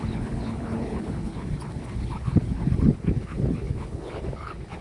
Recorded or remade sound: remade